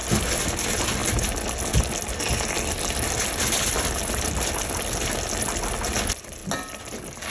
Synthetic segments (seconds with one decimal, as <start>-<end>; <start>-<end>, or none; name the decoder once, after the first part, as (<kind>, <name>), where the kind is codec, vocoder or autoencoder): none